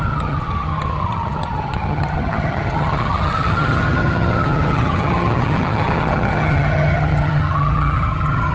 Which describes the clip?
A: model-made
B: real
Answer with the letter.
A